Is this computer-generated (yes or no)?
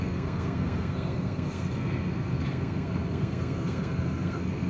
yes